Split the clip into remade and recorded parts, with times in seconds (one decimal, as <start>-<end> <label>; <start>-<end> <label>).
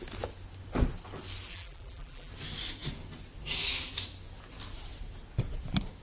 0.0-1.5 recorded; 1.5-2.3 remade; 2.3-6.0 recorded